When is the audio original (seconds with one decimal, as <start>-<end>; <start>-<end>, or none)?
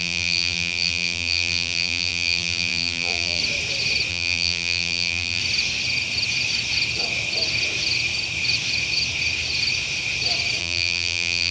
3.4-4.1; 5.4-10.6